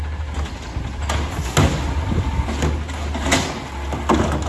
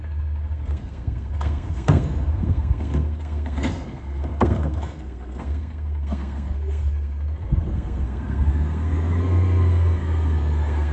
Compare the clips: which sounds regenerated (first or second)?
second